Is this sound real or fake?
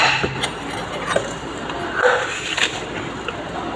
real